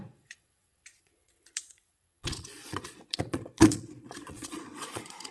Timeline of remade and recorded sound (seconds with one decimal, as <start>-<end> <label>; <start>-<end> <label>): 0.0-5.3 remade